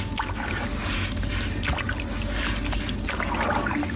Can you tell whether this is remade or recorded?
recorded